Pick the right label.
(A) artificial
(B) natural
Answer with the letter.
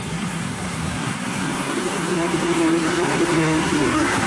A